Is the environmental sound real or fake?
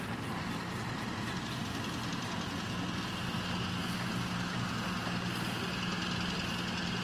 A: real